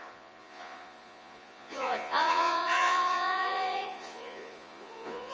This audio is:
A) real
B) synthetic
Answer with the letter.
B